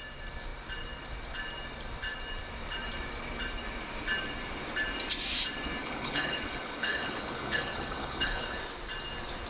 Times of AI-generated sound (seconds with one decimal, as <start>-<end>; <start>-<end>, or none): 5.8-8.6